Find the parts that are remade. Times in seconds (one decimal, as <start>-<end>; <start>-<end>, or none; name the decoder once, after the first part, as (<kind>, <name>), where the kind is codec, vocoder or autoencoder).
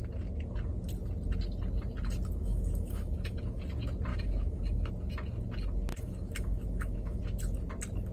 2.4-3.6 (autoencoder, DAC-VAE); 4.1-4.9; 5.9-7.2